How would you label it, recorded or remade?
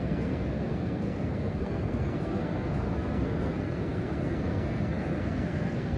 remade